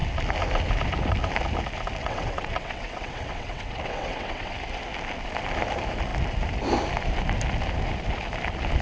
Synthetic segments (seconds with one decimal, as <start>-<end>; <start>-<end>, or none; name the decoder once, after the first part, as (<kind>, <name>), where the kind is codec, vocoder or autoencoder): 2.0-4.5 (vocoder, WaveNeXt)